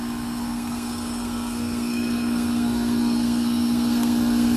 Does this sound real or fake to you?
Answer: fake